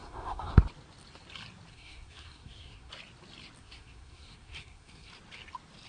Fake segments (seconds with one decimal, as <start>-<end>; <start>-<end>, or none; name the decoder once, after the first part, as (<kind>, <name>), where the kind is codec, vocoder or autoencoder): 0.0-0.5 (codec, SNAC); 1.7-2.9; 3.6-5.1